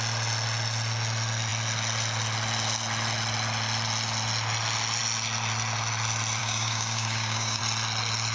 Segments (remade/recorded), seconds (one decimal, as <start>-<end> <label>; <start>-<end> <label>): 0.0-6.4 recorded; 6.4-7.6 remade; 7.6-8.3 recorded